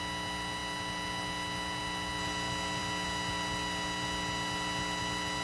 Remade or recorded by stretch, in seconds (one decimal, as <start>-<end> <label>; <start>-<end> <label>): 0.0-5.4 recorded